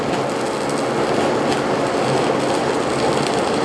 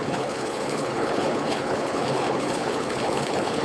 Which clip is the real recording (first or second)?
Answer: first